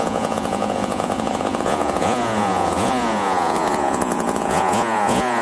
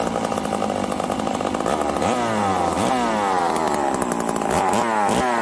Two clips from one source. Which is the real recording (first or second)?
second